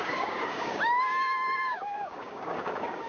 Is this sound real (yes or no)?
no